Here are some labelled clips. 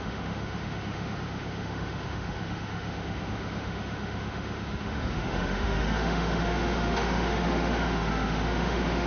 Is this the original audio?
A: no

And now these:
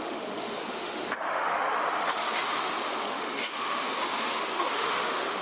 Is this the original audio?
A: no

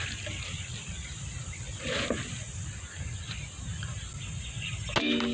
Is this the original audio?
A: yes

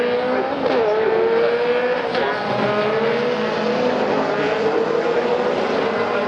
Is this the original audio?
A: yes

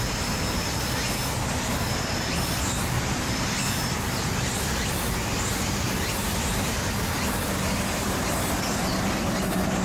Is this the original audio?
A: yes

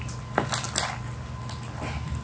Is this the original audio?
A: yes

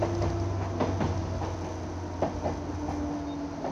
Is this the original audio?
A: yes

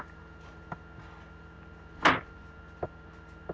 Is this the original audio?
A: yes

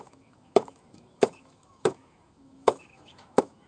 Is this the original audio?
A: no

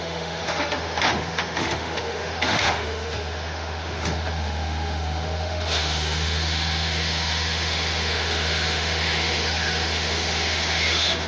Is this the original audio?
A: no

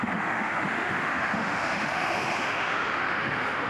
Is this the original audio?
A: no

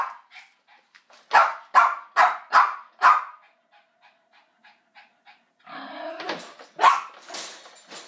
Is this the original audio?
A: yes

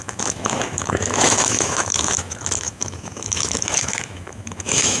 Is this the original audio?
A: no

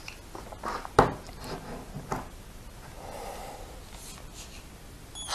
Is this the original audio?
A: yes